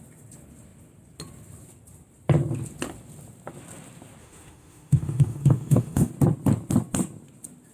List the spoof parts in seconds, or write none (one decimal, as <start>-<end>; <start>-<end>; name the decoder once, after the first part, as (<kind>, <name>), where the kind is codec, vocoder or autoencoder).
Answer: 4.2-6.1 (autoencoder, DAC-VAE)